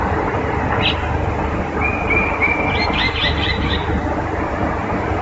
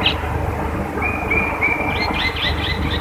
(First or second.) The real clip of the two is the second